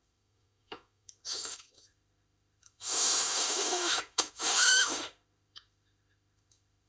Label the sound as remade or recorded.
remade